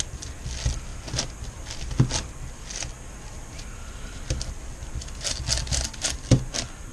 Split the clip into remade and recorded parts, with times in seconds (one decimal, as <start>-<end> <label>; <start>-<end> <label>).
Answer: 0.0-6.9 recorded